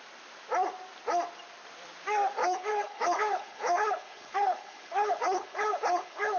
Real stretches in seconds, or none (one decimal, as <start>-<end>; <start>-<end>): 0.0-2.4